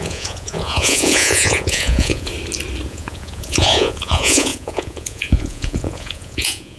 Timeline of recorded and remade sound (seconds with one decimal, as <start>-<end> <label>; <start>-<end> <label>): 0.0-2.3 remade; 2.3-2.9 recorded; 2.9-6.8 remade